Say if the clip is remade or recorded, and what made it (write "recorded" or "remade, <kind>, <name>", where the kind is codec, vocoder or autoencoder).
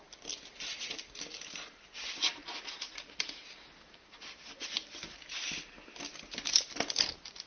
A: recorded